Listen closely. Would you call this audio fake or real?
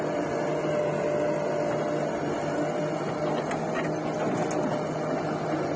real